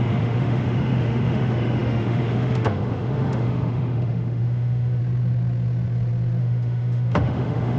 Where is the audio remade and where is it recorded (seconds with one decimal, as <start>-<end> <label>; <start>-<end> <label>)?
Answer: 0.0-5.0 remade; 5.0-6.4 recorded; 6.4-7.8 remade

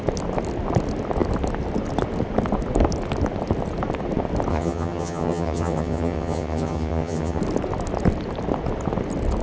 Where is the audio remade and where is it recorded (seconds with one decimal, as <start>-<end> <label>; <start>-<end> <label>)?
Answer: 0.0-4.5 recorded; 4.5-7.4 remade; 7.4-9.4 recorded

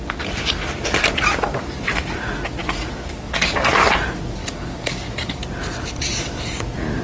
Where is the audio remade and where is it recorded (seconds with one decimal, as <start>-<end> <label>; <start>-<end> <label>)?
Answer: 0.0-2.6 recorded; 2.6-3.7 remade; 3.7-4.4 recorded; 4.4-5.4 remade; 5.4-7.0 recorded